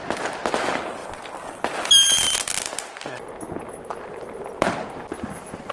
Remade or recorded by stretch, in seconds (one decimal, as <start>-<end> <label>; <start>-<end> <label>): 0.0-5.7 recorded